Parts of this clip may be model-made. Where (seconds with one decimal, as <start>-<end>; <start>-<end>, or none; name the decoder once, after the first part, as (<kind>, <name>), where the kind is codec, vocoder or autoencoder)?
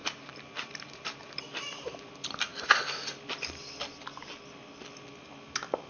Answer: 0.0-2.1 (vocoder, BigVGAN v2)